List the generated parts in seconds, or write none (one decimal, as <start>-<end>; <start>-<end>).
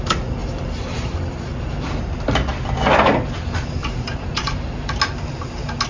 0.4-1.9; 3.8-5.0